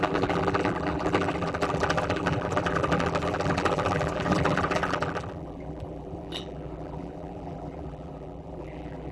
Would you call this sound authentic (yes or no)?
no